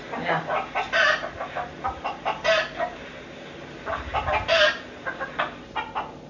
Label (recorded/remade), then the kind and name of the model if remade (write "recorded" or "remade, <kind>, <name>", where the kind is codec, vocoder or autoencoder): recorded